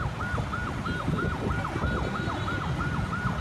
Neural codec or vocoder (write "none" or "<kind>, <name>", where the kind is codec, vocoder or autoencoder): none